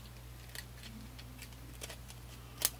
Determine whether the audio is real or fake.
real